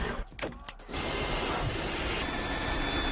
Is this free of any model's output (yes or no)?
yes